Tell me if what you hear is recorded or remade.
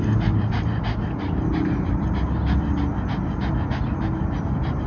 recorded